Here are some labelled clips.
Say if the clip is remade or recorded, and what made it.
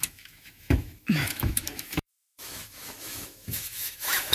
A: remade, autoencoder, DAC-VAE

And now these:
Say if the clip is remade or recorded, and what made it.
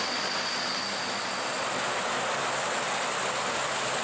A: recorded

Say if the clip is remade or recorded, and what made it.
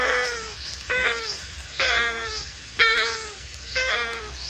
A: remade, codec, SNAC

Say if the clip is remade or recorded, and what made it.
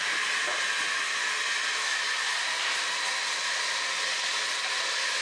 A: recorded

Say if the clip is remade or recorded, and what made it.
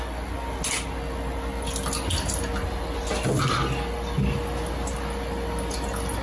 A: recorded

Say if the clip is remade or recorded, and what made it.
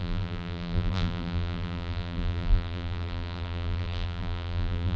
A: remade, vocoder, BigVGAN v2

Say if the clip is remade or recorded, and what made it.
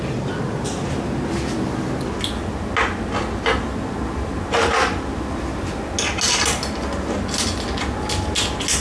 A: recorded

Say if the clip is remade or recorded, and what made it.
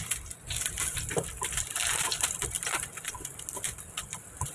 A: recorded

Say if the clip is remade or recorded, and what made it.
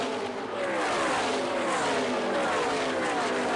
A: recorded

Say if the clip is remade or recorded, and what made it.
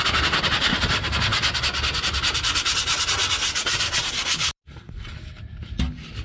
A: recorded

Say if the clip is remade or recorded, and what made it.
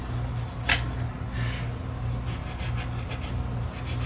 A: recorded